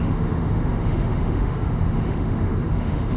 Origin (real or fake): fake